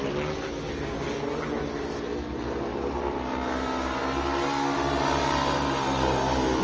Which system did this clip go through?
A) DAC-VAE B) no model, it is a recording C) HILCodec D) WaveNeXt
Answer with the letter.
B